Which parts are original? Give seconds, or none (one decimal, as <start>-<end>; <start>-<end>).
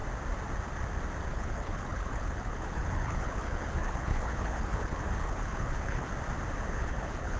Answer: 0.0-1.3; 6.1-6.7